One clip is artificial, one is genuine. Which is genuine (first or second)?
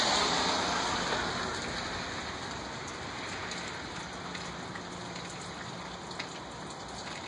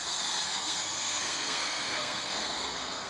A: first